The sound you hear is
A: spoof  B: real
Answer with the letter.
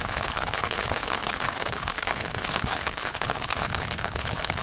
A